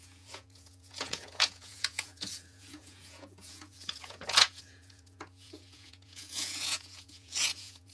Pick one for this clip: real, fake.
fake